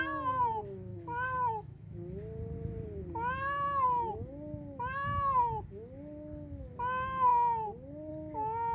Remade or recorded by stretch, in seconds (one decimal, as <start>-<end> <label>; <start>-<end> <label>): 0.0-0.9 recorded; 0.9-1.9 remade; 1.9-8.7 recorded